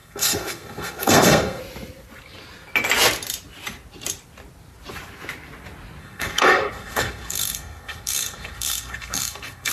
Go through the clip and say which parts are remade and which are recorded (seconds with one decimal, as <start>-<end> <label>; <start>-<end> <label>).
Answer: 0.0-1.6 remade; 1.6-6.0 recorded; 6.0-9.7 remade